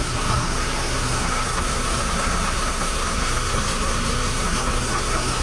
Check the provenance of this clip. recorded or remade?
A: remade